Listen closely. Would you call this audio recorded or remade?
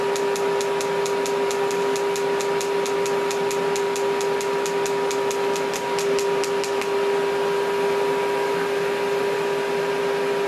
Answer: recorded